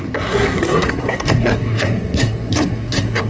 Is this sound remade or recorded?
remade